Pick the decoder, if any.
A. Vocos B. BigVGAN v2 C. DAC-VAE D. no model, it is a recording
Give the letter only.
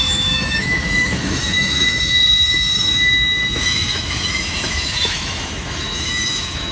C